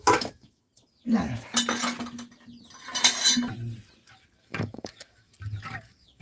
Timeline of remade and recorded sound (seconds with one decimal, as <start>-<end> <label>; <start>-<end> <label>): 0.0-0.7 remade; 0.7-4.4 recorded; 4.4-5.3 remade; 5.3-5.8 recorded; 5.8-6.2 remade